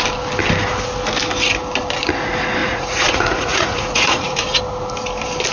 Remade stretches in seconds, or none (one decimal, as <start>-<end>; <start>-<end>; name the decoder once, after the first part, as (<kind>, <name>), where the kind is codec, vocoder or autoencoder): 2.6-4.6 (vocoder, Vocos)